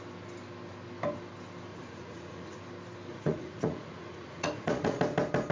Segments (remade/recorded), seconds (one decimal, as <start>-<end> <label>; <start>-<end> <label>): 0.0-1.7 recorded; 1.7-2.6 remade; 2.6-3.1 recorded; 3.1-5.0 remade; 5.0-5.5 recorded